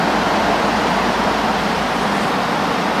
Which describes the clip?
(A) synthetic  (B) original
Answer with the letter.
A